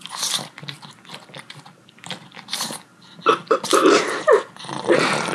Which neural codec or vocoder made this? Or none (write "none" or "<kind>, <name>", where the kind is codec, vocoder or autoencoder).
vocoder, BigVGAN v2